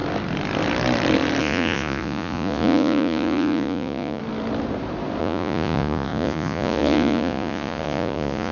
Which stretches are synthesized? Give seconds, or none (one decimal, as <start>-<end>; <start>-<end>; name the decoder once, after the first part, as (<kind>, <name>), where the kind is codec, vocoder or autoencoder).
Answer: 1.4-4.2 (vocoder, Vocos); 5.2-8.5

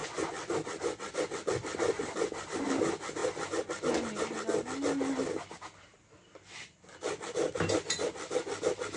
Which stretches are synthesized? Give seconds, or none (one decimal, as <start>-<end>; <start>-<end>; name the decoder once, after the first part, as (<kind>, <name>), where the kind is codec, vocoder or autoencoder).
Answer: none

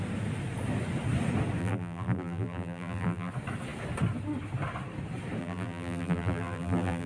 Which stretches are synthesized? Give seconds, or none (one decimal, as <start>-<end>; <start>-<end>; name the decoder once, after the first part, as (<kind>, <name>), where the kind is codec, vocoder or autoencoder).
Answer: 1.6-3.3 (vocoder, BigVGAN v2); 5.4-7.1

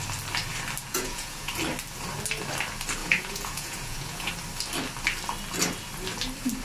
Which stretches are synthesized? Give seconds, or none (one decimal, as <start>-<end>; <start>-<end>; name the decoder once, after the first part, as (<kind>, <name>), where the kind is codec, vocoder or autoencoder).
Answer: 0.8-1.5 (vocoder, Vocos); 3.0-4.3